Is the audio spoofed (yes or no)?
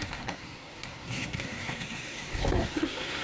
yes